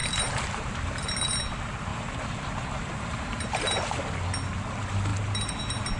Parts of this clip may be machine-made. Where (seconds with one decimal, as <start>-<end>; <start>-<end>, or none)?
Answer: 0.0-1.1; 1.9-4.0